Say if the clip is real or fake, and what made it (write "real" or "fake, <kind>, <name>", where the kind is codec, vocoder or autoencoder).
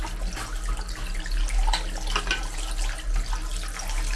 real